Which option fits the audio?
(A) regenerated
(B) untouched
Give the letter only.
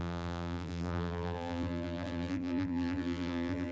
A